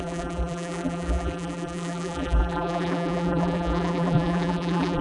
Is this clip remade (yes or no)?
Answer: yes